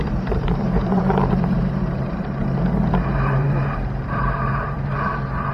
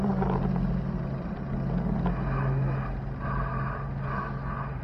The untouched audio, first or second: second